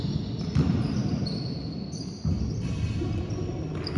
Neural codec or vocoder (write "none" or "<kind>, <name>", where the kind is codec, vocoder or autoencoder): none